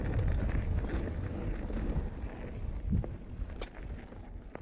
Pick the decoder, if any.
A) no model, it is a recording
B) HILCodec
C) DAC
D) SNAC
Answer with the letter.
A